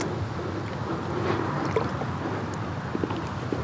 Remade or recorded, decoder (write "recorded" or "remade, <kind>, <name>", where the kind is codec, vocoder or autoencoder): recorded